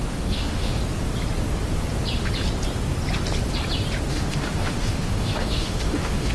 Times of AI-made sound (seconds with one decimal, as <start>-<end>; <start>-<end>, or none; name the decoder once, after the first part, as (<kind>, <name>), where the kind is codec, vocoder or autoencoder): 0.0-0.8 (autoencoder, DAC-VAE); 4.1-6.3